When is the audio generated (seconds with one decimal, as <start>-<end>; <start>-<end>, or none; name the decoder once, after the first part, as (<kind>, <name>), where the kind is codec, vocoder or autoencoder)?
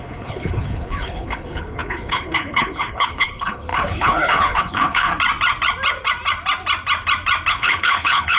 0.0-5.1 (codec, HILCodec); 7.5-8.4